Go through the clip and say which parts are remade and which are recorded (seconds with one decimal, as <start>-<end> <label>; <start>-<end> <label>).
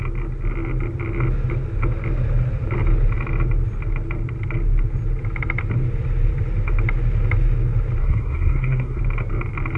0.0-8.0 recorded; 8.0-9.0 remade; 9.0-9.8 recorded